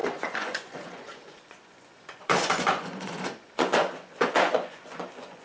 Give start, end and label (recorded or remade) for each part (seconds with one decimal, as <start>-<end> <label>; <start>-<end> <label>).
0.0-5.4 remade